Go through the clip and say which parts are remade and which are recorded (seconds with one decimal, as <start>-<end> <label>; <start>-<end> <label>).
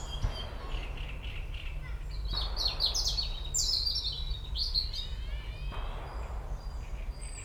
0.0-7.4 recorded